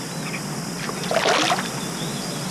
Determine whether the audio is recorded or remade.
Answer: recorded